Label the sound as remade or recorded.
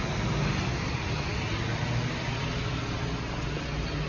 recorded